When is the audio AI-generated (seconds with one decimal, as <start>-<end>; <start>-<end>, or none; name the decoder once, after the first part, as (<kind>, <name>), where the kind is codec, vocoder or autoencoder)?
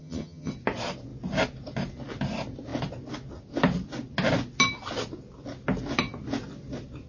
0.0-0.5 (vocoder, HiFi-GAN)